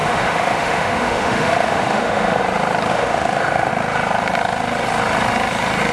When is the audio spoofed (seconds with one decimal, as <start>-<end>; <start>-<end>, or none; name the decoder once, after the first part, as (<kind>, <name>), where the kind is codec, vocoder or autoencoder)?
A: 0.0-2.4 (autoencoder, DAC-VAE); 2.9-3.7